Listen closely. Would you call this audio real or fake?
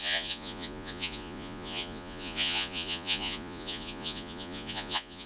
fake